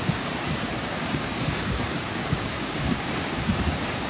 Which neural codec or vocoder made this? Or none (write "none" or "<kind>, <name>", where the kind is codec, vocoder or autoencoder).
codec, DAC